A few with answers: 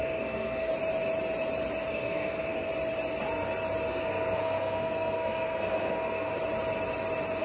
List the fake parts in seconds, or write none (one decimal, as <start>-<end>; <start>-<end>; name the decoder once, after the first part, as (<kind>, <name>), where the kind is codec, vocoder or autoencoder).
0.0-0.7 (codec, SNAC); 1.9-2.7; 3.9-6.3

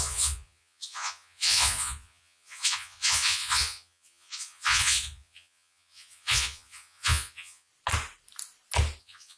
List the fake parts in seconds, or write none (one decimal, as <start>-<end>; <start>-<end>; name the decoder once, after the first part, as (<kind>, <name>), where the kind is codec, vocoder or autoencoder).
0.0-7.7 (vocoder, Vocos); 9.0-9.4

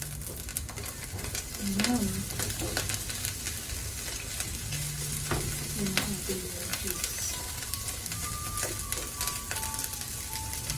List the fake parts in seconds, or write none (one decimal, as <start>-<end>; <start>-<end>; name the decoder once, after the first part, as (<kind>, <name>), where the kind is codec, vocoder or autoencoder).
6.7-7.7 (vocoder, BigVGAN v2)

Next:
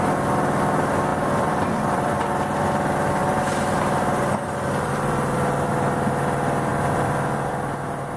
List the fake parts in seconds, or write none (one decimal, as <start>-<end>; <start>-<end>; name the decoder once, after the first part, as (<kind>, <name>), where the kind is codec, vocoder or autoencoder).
1.1-2.2 (vocoder, BigVGAN v2); 3.2-5.7; 6.7-7.5

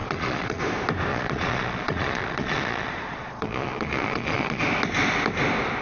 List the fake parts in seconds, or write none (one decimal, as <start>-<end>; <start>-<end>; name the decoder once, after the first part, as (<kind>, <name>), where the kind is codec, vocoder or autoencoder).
0.0-0.6 (vocoder, Vocos); 1.1-4.6

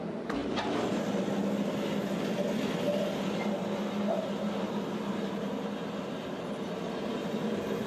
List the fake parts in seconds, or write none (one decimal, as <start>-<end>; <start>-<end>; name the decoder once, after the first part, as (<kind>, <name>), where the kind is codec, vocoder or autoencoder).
none

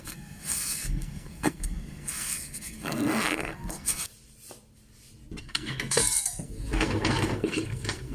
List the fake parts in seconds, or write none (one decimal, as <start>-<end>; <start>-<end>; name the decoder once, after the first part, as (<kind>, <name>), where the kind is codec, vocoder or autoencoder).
0.0-4.1 (codec, SNAC); 5.4-8.1

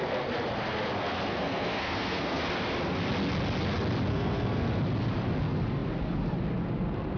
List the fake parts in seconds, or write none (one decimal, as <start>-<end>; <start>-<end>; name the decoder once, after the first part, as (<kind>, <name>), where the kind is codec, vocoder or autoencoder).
1.3-2.4 (codec, SNAC); 4.1-4.8